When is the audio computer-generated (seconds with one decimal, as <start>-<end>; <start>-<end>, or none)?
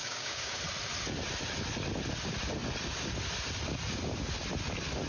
0.0-0.6